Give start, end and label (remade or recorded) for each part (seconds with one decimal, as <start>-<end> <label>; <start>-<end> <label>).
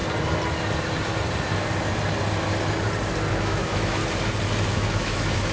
0.0-3.3 recorded; 3.3-4.0 remade; 4.0-4.7 recorded; 4.7-5.5 remade